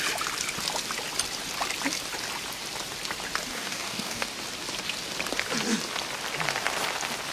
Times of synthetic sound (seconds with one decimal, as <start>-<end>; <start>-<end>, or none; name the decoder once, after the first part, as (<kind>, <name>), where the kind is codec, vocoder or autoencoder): 3.5-4.3 (codec, DAC)